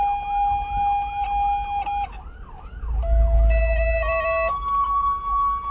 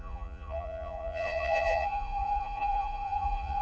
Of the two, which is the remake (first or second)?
second